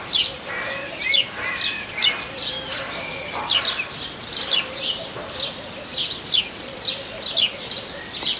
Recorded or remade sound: recorded